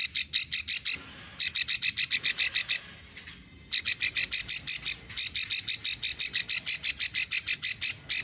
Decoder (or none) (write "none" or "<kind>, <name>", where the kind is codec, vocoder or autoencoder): none